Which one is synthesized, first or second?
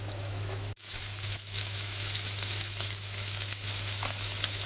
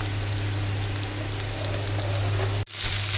first